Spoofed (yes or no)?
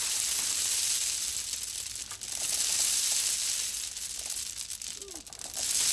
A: no